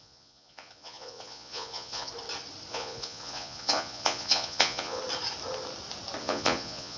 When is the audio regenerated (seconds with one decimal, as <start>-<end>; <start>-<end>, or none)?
0.0-2.1; 2.7-5.0; 6.2-7.0